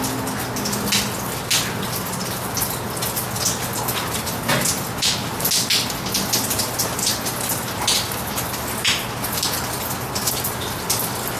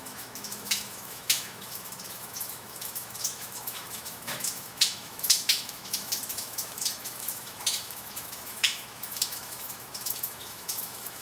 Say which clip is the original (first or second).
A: first